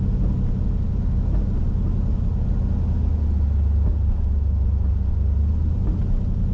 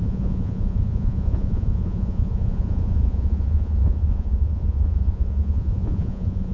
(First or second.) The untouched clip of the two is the first